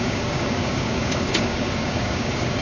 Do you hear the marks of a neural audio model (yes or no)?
yes